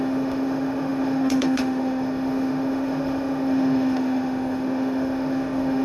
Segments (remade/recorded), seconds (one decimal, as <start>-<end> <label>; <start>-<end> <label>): 0.0-5.8 remade